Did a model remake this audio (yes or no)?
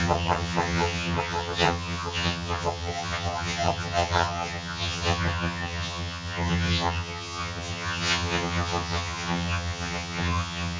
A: yes